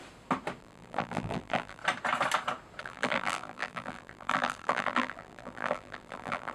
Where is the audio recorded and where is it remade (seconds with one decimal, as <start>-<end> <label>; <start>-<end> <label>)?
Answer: 0.0-0.6 recorded; 0.6-1.8 remade; 1.8-2.8 recorded; 2.8-6.5 remade